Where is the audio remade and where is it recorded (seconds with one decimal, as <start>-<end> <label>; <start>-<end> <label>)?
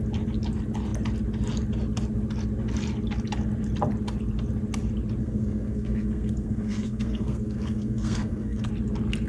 0.0-5.2 recorded; 5.2-8.7 remade; 8.7-9.3 recorded